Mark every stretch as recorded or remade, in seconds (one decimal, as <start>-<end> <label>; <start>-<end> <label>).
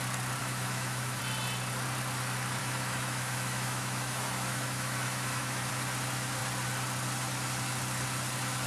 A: 0.0-0.4 recorded; 0.4-1.2 remade; 1.2-2.6 recorded; 2.6-5.7 remade; 5.7-8.7 recorded